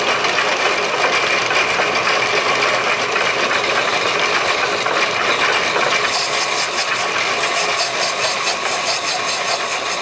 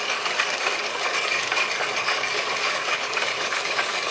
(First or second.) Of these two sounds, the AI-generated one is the second